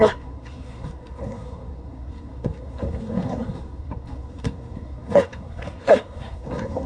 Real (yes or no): no